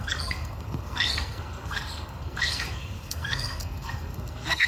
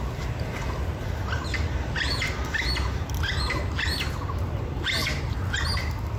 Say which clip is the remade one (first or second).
first